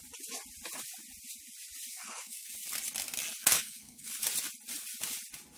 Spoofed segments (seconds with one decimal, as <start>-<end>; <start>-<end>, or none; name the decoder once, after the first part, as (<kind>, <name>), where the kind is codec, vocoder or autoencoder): 1.9-2.5 (codec, SNAC); 3.4-4.1